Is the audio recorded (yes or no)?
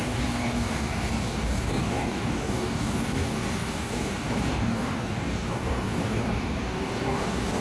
no